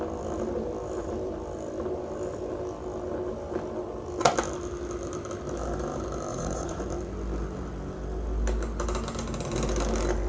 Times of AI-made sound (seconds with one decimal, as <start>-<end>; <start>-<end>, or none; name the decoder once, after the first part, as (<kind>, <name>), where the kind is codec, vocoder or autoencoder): 6.3-6.8 (vocoder, Vocos)

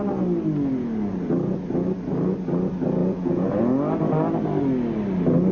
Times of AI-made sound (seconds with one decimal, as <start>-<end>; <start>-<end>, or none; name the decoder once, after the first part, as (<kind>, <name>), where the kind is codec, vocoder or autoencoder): 3.0-3.6 (vocoder, Vocos)

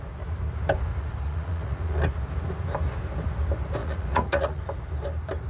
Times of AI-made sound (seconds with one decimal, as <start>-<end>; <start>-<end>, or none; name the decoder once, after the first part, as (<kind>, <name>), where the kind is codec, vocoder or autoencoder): 0.9-2.1 (vocoder, Vocos); 3.8-4.6

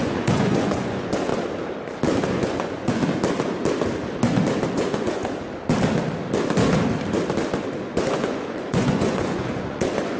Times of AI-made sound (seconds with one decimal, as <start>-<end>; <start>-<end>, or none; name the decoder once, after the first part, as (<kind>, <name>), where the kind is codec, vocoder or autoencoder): 0.0-1.3 (vocoder, Vocos); 2.3-3.0; 4.7-5.2; 7.8-10.2

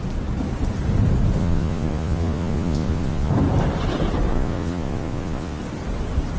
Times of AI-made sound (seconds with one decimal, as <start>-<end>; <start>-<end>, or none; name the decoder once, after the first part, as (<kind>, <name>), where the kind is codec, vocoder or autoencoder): 1.4-3.3 (vocoder, Vocos); 4.3-5.6

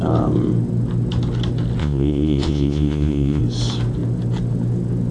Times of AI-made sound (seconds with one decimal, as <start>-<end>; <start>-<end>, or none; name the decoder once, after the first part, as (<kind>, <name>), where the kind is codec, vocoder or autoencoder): 1.8-3.4 (vocoder, Vocos)

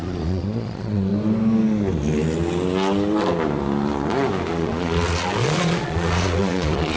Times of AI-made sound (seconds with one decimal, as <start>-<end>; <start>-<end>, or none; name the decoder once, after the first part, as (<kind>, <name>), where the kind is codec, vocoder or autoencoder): 0.0-1.1 (vocoder, Vocos); 4.5-7.0

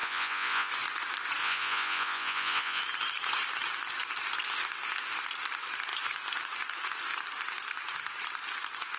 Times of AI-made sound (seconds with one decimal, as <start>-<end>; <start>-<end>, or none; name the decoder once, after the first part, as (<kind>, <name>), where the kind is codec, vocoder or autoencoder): 0.0-0.7 (vocoder, Vocos); 1.4-2.8